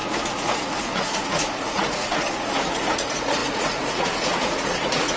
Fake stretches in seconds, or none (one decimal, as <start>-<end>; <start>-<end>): 0.0-5.2